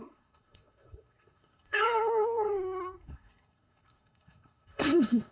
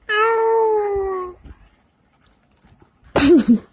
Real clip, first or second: second